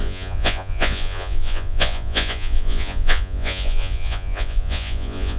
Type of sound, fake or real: fake